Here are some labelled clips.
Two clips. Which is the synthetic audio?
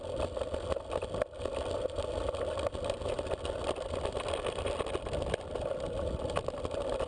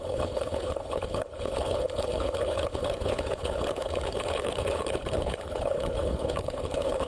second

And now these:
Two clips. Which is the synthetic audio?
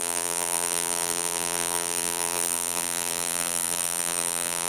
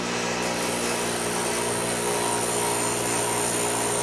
first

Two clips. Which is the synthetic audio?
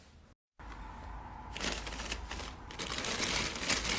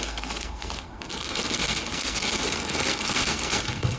second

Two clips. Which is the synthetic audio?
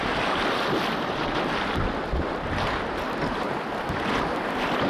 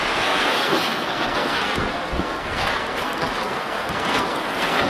second